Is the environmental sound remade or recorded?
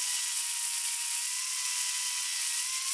remade